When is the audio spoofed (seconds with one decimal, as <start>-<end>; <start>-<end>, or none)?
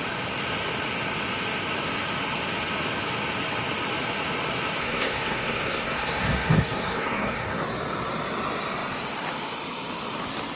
4.8-7.6